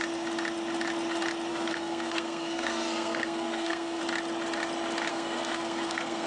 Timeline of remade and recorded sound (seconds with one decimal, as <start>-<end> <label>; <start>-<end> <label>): 0.0-1.5 recorded; 1.5-4.0 remade; 4.0-5.1 recorded; 5.1-6.3 remade